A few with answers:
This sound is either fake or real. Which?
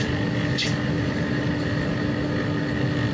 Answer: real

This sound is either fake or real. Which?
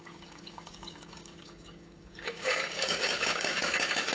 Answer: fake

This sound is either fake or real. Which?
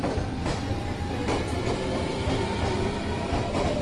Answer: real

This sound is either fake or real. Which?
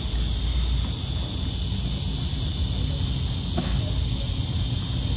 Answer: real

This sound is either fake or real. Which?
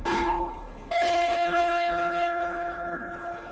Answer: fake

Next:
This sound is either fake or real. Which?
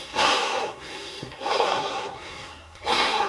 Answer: fake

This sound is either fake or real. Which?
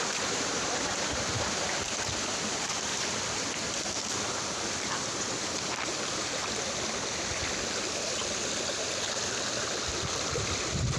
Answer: fake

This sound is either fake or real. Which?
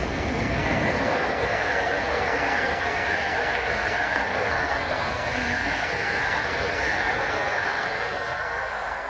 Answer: fake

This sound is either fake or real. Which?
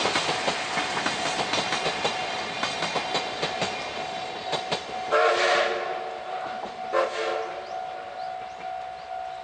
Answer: real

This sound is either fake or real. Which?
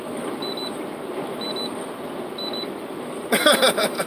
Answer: real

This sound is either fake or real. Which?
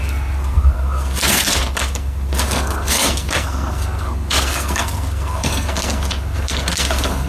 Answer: fake